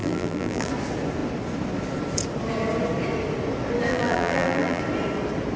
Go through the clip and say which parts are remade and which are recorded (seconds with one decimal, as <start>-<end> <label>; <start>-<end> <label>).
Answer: 0.0-0.7 remade; 0.7-3.9 recorded; 3.9-4.8 remade; 4.8-5.6 recorded